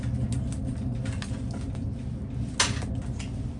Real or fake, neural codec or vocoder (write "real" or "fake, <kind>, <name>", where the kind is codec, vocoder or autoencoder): real